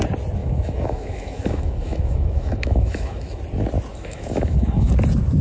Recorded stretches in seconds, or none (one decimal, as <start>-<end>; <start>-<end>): 0.0-0.4; 3.4-3.9; 4.9-5.4